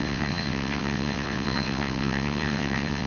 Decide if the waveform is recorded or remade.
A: remade